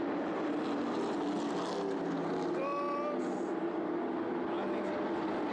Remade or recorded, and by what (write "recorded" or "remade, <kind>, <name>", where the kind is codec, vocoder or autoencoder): recorded